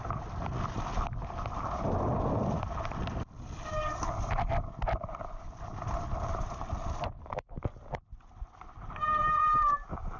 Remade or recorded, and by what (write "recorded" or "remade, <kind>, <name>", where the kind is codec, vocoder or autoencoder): recorded